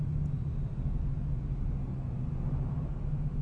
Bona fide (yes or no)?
yes